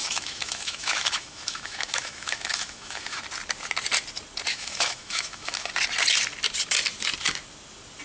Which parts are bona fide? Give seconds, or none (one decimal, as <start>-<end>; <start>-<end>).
3.2-4.5; 5.7-8.0